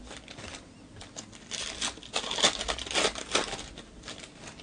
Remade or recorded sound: recorded